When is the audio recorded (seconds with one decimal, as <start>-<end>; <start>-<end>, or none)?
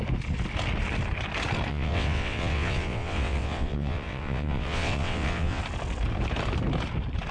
0.0-1.7; 5.6-7.3